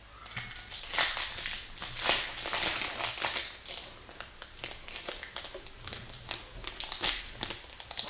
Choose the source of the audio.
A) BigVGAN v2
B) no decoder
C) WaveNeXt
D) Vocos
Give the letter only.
B